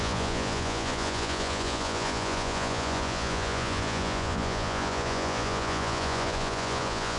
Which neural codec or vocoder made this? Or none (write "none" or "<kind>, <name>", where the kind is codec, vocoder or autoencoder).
vocoder, Vocos